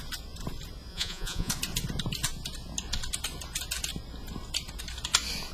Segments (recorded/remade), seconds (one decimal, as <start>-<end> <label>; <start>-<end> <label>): 0.0-0.9 recorded; 0.9-1.5 remade; 1.5-5.5 recorded